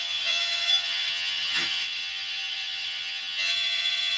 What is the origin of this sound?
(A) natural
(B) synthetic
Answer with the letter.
B